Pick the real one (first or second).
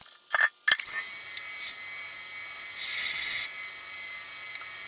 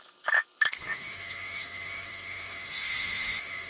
first